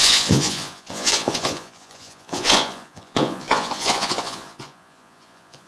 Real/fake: fake